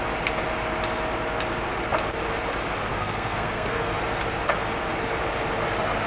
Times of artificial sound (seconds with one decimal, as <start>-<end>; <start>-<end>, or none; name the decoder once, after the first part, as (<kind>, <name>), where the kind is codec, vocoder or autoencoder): 2.9-4.0 (codec, SNAC)